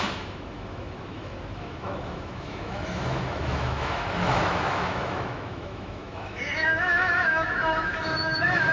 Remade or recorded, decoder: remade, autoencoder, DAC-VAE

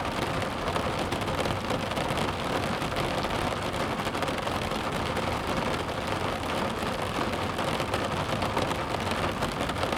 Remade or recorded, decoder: recorded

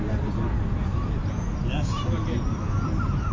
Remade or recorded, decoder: recorded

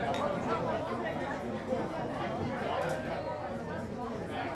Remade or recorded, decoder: recorded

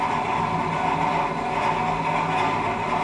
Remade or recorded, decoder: recorded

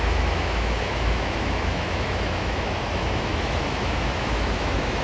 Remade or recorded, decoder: remade, autoencoder, DAC-VAE